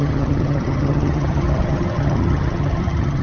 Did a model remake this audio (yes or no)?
yes